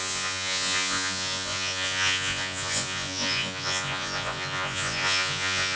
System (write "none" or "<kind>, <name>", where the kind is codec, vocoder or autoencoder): vocoder, Vocos